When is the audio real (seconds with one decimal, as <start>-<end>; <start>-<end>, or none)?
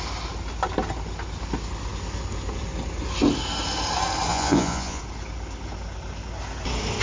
0.0-4.3; 5.0-7.0